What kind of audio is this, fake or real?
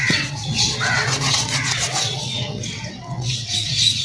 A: fake